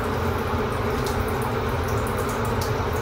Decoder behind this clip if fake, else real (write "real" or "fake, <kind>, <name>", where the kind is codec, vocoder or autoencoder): real